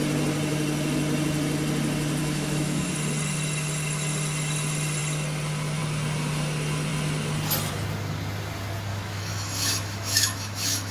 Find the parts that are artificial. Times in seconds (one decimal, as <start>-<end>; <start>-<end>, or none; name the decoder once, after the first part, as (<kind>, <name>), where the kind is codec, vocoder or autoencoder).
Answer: 2.2-2.9 (autoencoder, DAC-VAE); 8.9-10.9

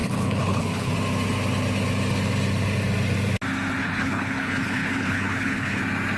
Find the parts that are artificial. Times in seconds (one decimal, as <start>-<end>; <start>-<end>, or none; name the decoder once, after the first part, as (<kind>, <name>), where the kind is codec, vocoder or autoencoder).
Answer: 0.0-0.9 (codec, HILCodec); 3.8-5.8

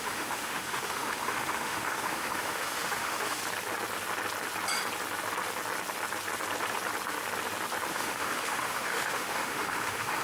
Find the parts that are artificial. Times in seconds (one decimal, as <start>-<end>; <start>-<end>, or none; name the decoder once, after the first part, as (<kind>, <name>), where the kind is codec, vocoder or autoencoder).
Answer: 0.0-3.4 (autoencoder, DAC-VAE); 7.9-10.2

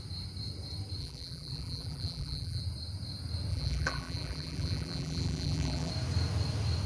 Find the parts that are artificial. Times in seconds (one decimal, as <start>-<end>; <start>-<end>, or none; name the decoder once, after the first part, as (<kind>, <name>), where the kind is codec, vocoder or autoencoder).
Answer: 1.0-2.6 (vocoder, BigVGAN v2); 3.5-5.9

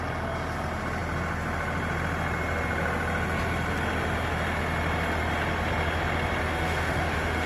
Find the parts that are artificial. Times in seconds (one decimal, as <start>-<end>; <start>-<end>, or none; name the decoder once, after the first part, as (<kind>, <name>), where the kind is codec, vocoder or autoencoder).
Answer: 6.4-7.5 (autoencoder, DAC-VAE)